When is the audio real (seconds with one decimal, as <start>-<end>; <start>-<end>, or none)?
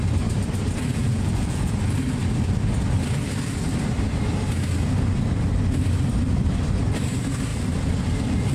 0.0-0.9; 1.8-8.5